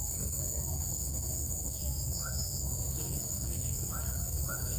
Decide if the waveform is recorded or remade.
remade